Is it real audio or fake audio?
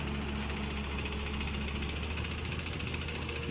real